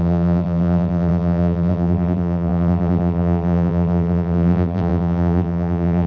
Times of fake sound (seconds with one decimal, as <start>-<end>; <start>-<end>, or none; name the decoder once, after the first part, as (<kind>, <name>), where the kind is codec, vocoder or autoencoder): 0.0-6.1 (vocoder, BigVGAN v2)